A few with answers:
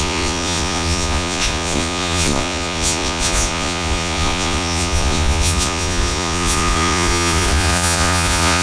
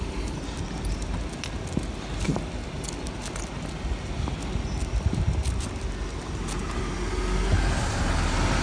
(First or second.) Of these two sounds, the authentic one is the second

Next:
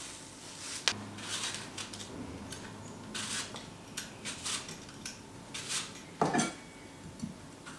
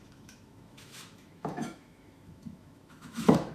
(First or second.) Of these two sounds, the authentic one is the first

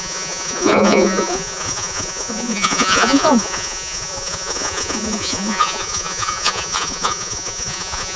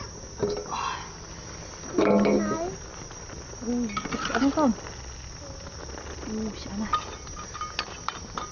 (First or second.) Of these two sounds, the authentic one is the second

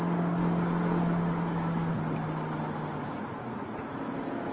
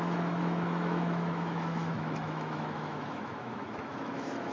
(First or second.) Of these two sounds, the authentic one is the first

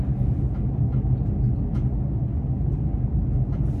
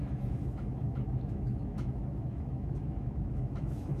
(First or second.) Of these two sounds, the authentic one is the first